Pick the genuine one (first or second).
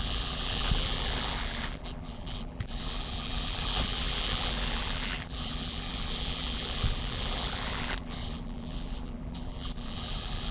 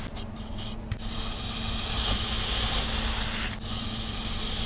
second